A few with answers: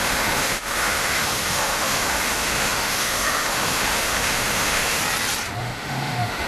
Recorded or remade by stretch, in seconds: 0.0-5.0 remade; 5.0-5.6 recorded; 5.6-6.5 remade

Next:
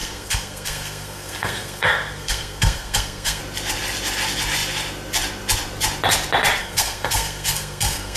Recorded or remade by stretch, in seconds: 0.0-3.4 remade; 3.4-6.6 recorded; 6.6-8.2 remade

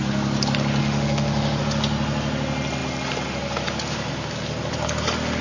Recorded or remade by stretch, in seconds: 0.0-0.8 recorded; 0.8-1.6 remade; 1.6-5.4 recorded